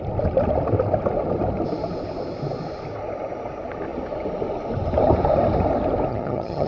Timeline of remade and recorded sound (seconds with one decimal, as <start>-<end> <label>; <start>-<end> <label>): 0.0-6.1 recorded; 6.1-6.7 remade